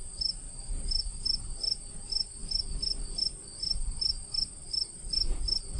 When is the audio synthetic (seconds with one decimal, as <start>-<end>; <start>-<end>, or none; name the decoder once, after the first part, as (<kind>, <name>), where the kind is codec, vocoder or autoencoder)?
none